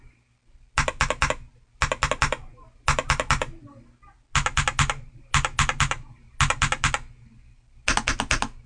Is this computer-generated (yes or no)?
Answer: no